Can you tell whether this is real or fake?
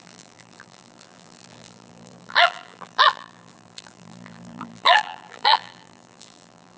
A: fake